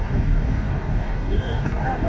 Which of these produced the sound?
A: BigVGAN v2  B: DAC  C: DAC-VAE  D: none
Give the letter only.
B